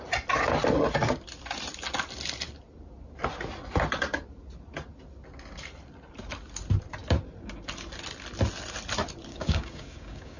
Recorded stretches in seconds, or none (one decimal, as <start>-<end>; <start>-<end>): 0.0-9.3